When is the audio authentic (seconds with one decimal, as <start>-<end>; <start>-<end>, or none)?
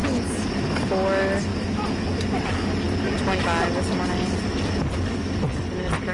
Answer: 0.0-6.1